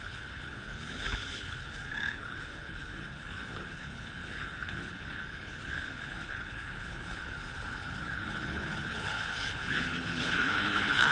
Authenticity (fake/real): fake